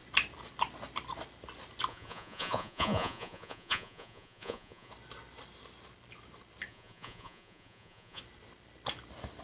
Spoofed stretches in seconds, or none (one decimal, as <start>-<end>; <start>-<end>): 1.9-4.9; 6.7-8.2